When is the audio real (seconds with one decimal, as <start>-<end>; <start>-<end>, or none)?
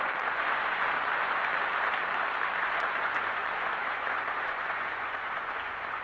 1.4-2.6